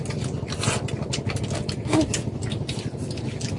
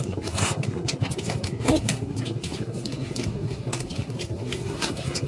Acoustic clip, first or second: first